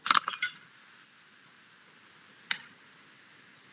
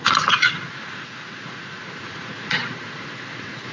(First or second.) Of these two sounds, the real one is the first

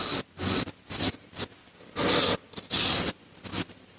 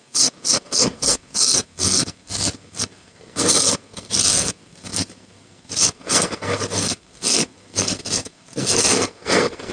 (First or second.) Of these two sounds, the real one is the first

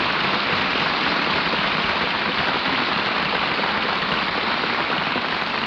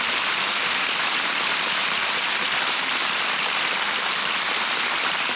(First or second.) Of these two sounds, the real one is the first